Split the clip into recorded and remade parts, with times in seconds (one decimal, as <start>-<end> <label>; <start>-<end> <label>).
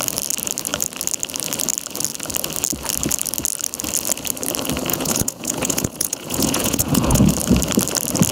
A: 0.0-4.9 recorded; 4.9-7.3 remade; 7.3-8.3 recorded